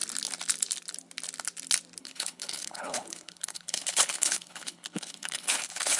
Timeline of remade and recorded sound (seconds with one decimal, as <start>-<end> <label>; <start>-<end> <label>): 0.0-2.0 recorded; 2.0-6.0 remade